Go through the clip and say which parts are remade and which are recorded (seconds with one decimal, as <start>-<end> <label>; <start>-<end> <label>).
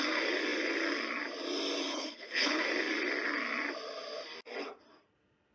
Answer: 0.0-1.9 recorded; 1.9-2.6 remade; 2.6-5.5 recorded